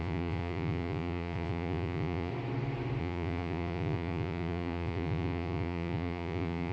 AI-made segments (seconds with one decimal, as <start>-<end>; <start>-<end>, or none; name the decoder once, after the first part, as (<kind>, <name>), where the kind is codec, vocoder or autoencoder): 0.0-2.3 (vocoder, Vocos); 3.0-6.7